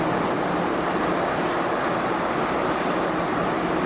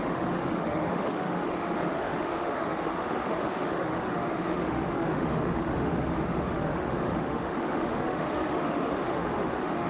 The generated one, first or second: second